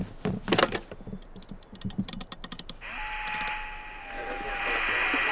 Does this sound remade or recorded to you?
recorded